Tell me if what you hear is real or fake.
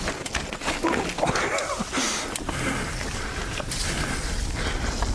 real